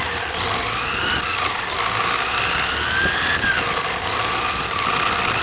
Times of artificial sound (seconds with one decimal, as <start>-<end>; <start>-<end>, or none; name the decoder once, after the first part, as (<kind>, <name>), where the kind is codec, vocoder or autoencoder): none